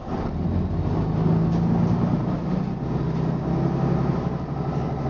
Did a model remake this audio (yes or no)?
no